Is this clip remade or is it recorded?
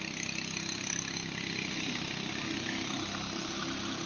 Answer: recorded